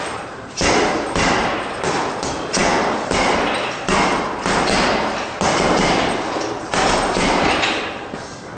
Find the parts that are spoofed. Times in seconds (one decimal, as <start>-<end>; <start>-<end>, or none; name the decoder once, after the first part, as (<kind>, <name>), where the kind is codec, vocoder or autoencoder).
0.0-2.6 (vocoder, BigVGAN v2); 7.1-8.6